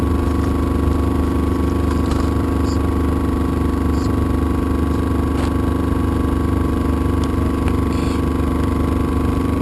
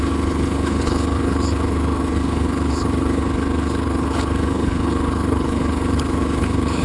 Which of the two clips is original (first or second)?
first